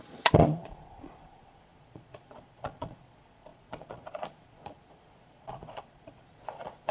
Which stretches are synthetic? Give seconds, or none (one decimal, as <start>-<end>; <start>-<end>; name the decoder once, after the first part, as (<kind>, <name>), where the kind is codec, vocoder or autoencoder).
0.0-6.9 (vocoder, Vocos)